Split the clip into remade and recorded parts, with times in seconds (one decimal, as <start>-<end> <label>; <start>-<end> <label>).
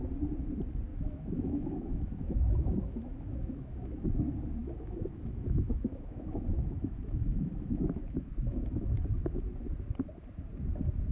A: 0.0-0.9 recorded; 0.9-4.1 remade; 4.1-4.6 recorded; 4.6-9.0 remade; 9.0-11.1 recorded